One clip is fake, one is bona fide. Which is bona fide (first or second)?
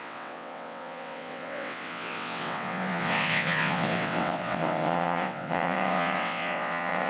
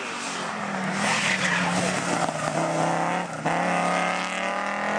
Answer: second